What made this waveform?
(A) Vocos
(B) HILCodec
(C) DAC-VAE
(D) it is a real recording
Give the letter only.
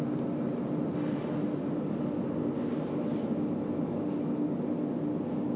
D